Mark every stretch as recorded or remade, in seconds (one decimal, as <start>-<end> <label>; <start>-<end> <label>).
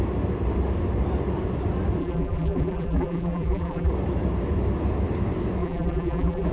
0.0-2.0 recorded; 2.0-3.9 remade; 3.9-5.6 recorded; 5.6-6.5 remade